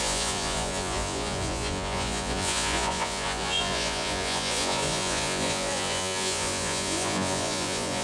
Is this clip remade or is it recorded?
remade